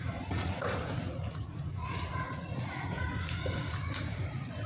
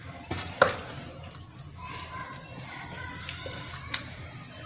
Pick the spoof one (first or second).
first